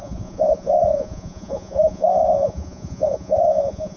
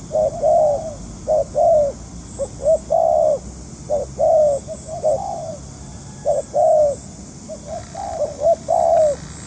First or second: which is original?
second